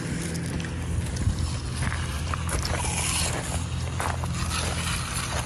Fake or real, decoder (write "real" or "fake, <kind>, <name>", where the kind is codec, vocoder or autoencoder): real